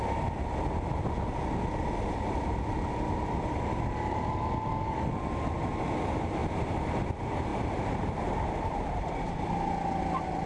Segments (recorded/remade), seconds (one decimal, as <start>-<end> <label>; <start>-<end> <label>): 0.0-6.4 recorded; 6.4-7.1 remade; 7.1-7.5 recorded; 7.5-8.3 remade; 8.3-10.5 recorded